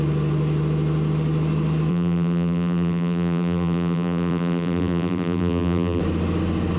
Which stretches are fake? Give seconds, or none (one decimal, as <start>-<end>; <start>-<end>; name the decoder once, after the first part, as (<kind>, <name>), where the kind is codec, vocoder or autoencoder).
1.9-6.0 (vocoder, BigVGAN v2)